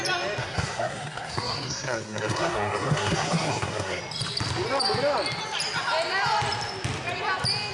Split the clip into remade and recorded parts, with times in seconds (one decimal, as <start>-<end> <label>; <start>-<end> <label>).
0.0-0.4 recorded; 0.4-4.0 remade; 4.0-7.7 recorded